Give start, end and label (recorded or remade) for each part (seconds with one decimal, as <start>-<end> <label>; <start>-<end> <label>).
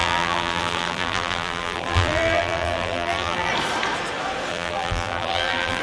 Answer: 0.0-3.5 remade; 3.5-4.5 recorded; 4.5-5.8 remade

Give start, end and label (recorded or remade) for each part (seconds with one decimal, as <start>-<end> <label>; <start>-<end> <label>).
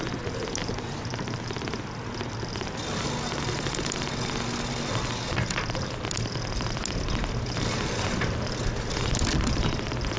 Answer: 0.0-0.6 recorded; 0.6-1.4 remade; 1.4-10.2 recorded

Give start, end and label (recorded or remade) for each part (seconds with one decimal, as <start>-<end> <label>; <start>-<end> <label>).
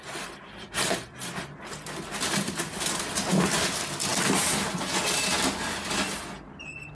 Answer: 0.0-6.9 recorded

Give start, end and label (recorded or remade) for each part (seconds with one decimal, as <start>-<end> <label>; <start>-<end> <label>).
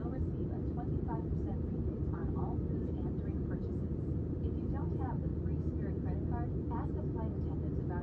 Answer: 0.0-2.2 remade; 2.2-2.8 recorded; 2.8-5.3 remade; 5.3-8.0 recorded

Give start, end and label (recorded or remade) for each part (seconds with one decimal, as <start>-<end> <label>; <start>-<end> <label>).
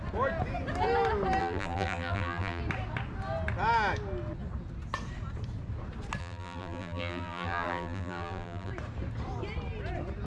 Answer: 0.0-1.4 recorded; 1.4-2.6 remade; 2.6-6.2 recorded; 6.2-8.7 remade; 8.7-10.3 recorded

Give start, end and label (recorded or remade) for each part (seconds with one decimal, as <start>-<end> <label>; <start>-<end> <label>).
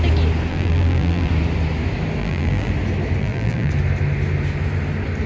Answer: 0.0-0.5 recorded; 0.5-1.3 remade; 1.3-2.2 recorded; 2.2-2.7 remade; 2.7-3.2 recorded; 3.2-3.7 remade; 3.7-5.3 recorded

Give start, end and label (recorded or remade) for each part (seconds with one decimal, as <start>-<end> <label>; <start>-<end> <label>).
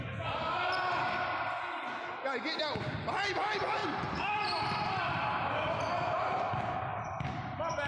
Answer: 0.0-3.8 recorded; 3.8-5.1 remade; 5.1-6.9 recorded; 6.9-7.9 remade